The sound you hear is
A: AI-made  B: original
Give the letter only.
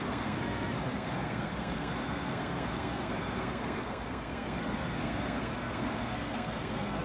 A